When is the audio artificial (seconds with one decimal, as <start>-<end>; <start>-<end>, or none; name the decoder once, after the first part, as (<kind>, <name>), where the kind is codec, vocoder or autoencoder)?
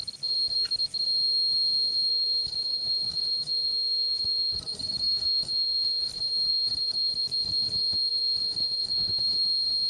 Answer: 2.1-6.1 (autoencoder, DAC-VAE); 6.5-7.1; 8.1-9.2